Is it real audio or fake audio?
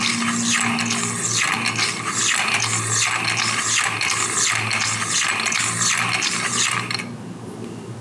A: real